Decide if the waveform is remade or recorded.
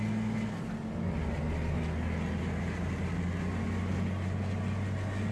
recorded